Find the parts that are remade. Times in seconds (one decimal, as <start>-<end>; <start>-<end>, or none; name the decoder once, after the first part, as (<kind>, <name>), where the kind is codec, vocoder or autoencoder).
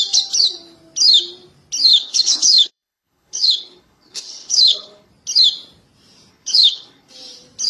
1.9-5.1 (codec, HILCodec); 6.3-7.1